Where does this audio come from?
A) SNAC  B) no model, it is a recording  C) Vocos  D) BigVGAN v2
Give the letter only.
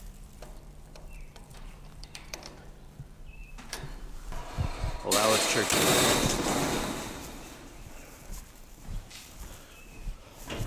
D